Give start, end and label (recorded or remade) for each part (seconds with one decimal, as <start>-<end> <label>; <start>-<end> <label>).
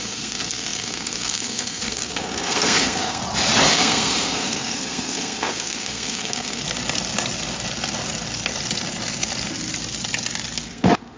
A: 0.0-3.2 remade; 3.2-3.7 recorded; 3.7-6.6 remade; 6.6-10.7 recorded; 10.7-11.2 remade